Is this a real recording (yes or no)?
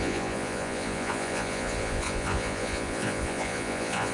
no